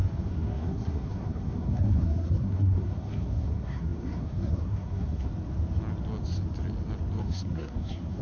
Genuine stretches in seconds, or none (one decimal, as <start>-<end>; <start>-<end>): 5.3-7.2